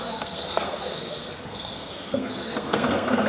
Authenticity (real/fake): fake